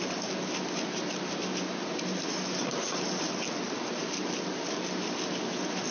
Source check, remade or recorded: recorded